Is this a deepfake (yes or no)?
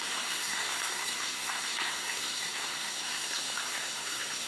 yes